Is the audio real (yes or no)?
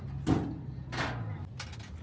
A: yes